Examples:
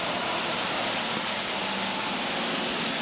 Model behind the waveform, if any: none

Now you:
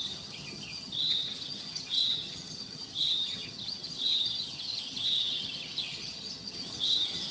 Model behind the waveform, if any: vocoder, HiFi-GAN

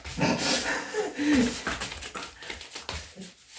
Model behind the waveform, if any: none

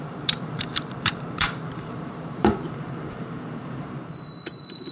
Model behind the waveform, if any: vocoder, BigVGAN v2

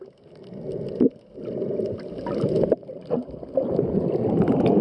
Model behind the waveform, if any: none